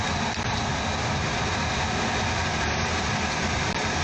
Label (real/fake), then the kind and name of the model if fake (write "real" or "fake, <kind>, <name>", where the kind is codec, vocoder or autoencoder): real